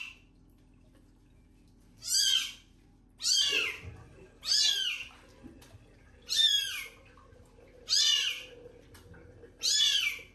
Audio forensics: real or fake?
real